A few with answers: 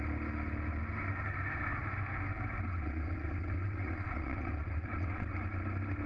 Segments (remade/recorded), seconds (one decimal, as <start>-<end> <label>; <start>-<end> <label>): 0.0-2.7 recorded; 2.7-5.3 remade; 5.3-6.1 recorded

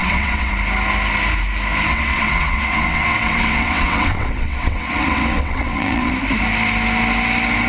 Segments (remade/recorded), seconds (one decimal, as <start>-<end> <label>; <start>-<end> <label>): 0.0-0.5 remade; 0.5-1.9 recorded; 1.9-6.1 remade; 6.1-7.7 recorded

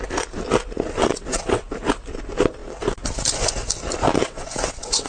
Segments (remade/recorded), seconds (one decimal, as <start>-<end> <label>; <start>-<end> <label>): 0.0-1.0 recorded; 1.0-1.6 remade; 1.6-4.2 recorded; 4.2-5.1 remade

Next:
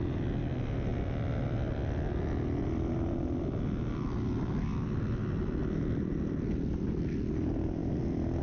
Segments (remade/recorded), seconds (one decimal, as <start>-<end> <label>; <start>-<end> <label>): 0.0-8.4 recorded

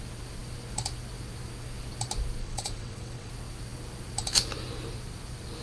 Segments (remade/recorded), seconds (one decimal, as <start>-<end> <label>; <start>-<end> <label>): 0.0-2.4 recorded; 2.4-3.3 remade; 3.3-5.6 recorded

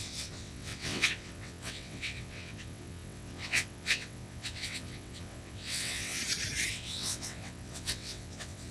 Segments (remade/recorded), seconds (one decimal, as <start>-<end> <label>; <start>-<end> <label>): 0.0-6.2 remade; 6.2-6.7 recorded; 6.7-8.7 remade

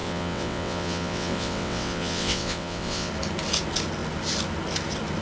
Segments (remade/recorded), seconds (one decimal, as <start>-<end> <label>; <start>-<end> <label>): 0.0-3.1 remade; 3.1-5.2 recorded

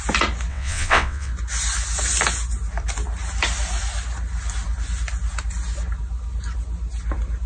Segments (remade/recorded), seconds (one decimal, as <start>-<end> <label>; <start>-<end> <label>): 0.0-0.5 recorded; 0.5-1.3 remade; 1.3-7.5 recorded